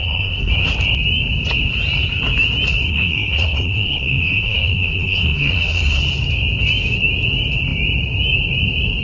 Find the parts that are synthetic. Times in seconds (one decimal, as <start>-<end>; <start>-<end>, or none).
0.0-0.5; 2.9-6.0